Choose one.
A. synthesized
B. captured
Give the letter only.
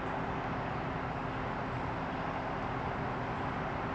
B